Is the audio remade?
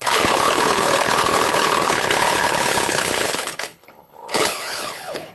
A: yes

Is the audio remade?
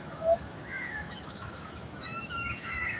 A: yes